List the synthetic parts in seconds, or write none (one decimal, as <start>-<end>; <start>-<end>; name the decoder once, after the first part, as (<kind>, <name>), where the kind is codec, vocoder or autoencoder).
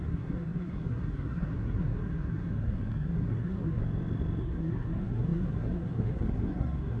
0.0-3.8 (codec, SNAC); 4.4-7.0